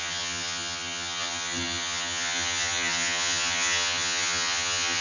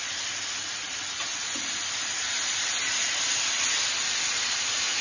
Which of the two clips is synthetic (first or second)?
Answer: first